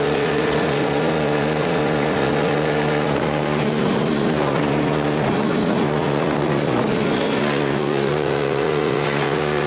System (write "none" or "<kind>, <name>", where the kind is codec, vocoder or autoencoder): vocoder, Vocos